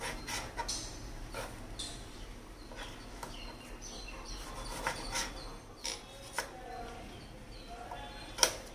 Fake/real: real